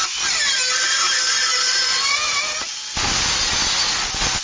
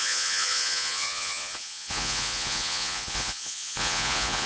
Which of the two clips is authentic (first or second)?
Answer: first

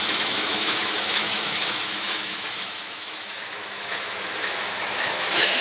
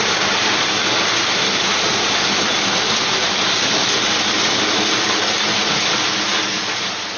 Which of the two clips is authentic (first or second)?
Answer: second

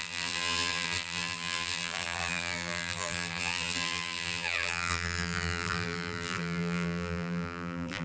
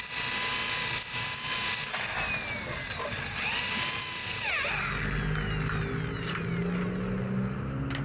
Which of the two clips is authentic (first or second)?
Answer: second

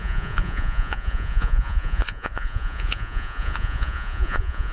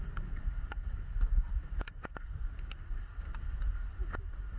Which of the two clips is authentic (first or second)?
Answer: second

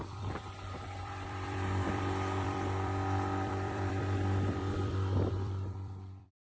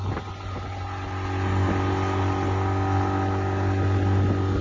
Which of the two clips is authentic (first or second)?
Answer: second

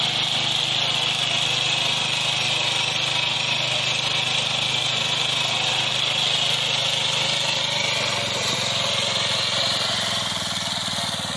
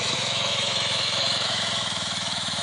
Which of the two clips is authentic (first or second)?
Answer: first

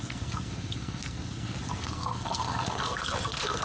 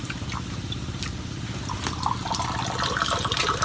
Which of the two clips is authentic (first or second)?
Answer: second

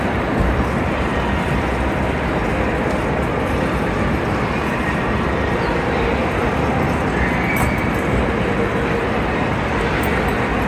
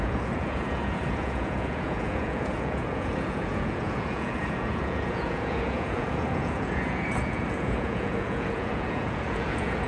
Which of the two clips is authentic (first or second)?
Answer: first